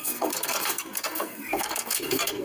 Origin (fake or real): fake